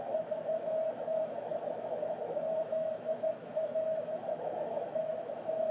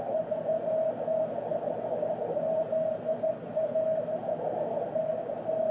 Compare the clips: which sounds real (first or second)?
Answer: second